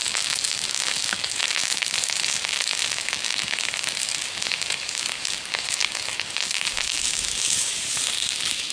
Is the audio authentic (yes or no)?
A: no